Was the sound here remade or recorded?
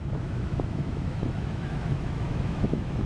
remade